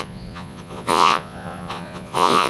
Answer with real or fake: fake